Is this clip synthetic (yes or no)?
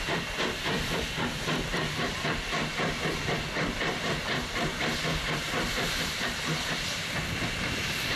yes